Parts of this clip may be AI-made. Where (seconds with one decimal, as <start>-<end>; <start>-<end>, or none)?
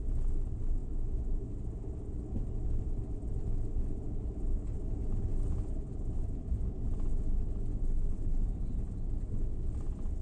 none